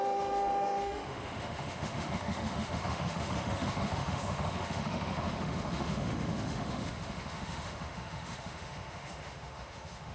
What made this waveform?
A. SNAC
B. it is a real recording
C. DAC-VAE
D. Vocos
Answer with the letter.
C